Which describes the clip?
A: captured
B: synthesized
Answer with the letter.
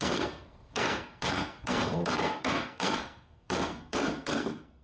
B